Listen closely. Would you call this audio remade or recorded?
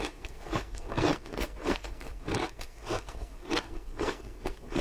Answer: remade